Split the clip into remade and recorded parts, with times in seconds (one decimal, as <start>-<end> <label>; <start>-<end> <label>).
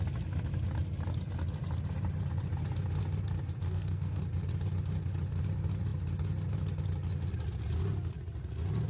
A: 0.0-3.6 recorded; 3.6-4.2 remade; 4.2-8.9 recorded